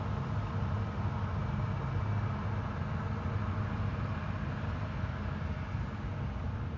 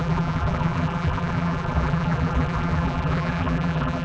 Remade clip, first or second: second